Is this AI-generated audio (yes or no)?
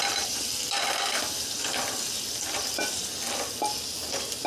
no